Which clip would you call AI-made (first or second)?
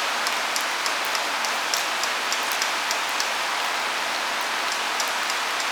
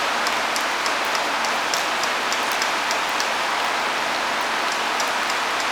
second